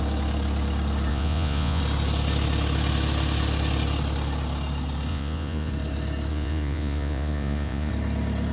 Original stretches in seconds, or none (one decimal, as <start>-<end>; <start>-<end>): 0.0-1.1; 1.8-5.1; 5.7-6.3; 7.9-8.5